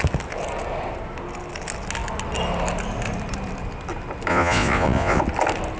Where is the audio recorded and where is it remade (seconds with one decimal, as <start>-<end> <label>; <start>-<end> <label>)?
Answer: 0.0-4.3 recorded; 4.3-5.2 remade; 5.2-5.8 recorded